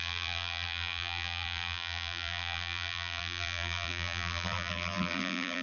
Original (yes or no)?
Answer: no